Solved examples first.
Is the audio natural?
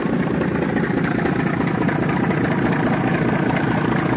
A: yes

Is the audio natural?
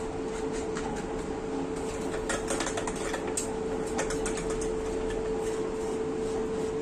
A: yes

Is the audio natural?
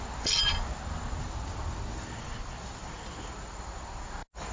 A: yes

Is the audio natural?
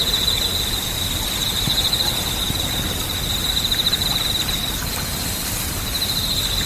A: no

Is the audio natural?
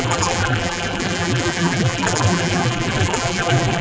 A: no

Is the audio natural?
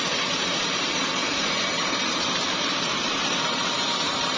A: no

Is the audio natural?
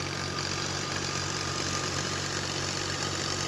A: yes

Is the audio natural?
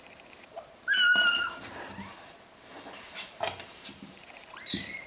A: no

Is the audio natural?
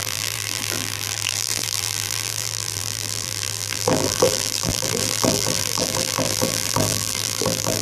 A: no